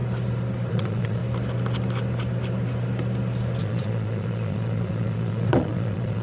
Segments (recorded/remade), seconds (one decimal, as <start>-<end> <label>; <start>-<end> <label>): 0.0-0.7 recorded; 0.7-1.2 remade; 1.2-3.6 recorded; 3.6-6.2 remade